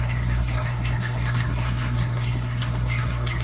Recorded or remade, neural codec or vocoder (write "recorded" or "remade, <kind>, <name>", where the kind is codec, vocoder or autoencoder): remade, codec, SNAC